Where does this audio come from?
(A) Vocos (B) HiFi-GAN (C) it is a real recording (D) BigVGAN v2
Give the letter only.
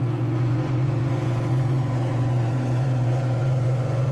A